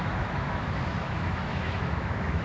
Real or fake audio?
fake